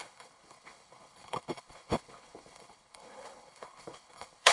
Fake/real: fake